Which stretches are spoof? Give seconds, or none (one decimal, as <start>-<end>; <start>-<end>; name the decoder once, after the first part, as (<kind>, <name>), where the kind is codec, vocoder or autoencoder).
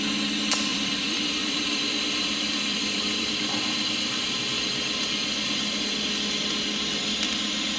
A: 0.7-1.9 (vocoder, BigVGAN v2); 2.7-3.3